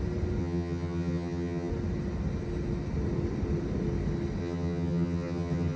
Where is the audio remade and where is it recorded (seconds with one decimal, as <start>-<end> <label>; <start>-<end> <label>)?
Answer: 0.0-0.4 recorded; 0.4-1.7 remade; 1.7-4.4 recorded; 4.4-5.8 remade